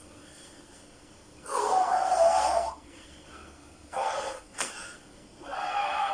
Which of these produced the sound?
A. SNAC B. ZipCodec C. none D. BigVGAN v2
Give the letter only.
A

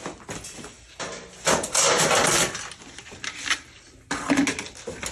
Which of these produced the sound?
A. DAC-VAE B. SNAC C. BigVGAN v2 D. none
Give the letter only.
D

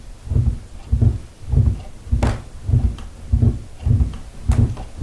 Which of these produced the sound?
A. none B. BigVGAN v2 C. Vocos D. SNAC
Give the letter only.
A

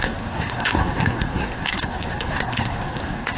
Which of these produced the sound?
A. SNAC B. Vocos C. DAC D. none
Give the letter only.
A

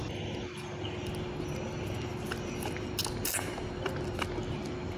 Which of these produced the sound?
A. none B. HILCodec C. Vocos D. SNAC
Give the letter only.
A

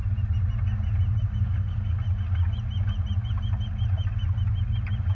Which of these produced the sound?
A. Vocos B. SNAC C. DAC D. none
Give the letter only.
D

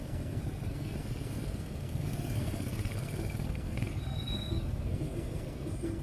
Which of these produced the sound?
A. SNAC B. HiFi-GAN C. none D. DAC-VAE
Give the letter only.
A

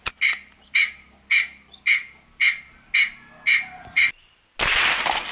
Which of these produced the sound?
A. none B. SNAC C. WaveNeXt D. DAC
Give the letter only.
A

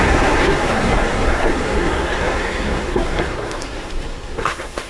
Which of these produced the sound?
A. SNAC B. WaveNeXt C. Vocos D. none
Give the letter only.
A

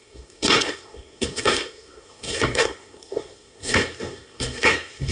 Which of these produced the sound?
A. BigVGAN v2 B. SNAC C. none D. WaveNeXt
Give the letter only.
B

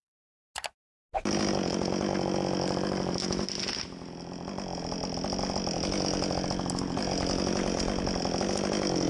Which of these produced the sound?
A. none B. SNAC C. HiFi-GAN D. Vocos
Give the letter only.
A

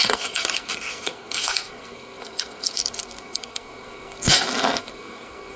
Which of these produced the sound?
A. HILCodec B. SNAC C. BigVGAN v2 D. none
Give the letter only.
B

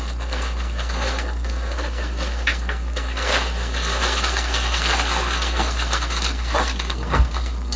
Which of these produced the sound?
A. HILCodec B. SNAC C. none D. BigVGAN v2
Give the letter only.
B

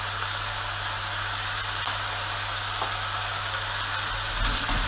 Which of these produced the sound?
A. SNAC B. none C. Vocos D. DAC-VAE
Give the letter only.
B